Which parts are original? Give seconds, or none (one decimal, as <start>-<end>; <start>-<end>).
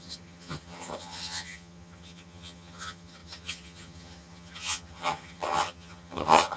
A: none